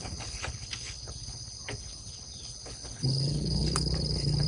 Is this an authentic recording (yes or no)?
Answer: no